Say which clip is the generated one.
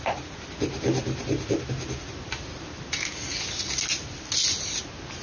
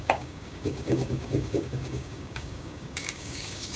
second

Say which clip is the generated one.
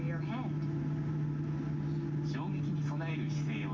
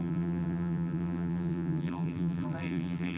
second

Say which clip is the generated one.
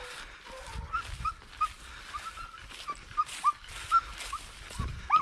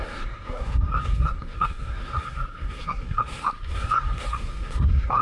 second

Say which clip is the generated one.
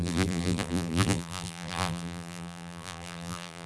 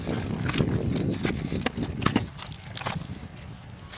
first